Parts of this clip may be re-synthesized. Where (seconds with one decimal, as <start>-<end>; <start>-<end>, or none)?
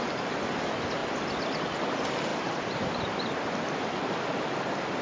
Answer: 2.3-3.5